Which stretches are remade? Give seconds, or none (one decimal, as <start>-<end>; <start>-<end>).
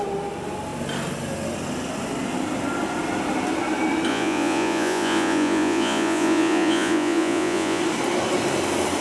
4.1-7.8